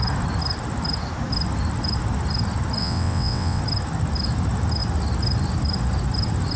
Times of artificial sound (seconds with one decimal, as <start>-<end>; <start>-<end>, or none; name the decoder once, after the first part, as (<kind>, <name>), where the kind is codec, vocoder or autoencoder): 2.8-3.6 (vocoder, WaveNeXt)